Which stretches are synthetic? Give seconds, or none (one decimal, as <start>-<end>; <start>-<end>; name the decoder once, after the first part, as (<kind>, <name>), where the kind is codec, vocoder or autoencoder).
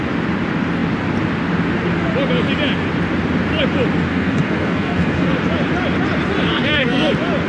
4.1-5.3 (codec, SNAC); 6.5-7.1